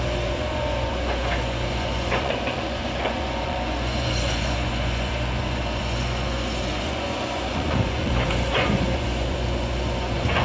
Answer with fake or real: fake